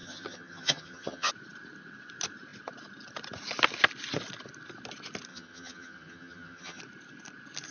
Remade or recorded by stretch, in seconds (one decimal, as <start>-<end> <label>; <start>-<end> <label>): 0.0-1.3 remade; 1.3-5.3 recorded; 5.3-6.8 remade; 6.8-7.7 recorded